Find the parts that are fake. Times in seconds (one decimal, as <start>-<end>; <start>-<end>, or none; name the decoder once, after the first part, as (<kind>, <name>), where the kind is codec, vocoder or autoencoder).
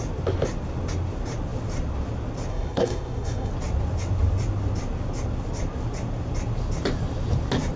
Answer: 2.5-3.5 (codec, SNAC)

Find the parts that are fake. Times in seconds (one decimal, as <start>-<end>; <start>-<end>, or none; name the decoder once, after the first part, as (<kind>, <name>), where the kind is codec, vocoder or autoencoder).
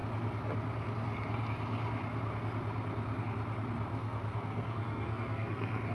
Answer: 3.9-5.9 (codec, SNAC)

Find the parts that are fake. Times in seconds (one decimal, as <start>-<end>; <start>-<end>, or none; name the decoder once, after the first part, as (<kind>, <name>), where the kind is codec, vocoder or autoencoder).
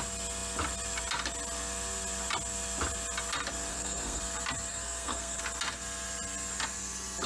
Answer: 3.7-4.2 (codec, SNAC); 4.7-5.4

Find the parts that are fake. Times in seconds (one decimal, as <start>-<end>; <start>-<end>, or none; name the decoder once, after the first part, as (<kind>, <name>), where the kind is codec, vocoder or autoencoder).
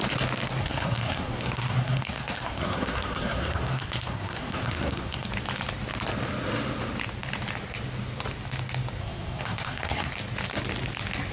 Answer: 0.6-5.3 (codec, SNAC); 9.0-10.1